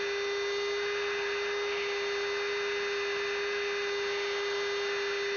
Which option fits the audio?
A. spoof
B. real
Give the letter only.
B